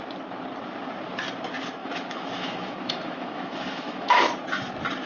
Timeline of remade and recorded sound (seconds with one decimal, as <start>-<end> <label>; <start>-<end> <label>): 0.0-1.8 recorded; 1.8-4.2 remade; 4.2-5.1 recorded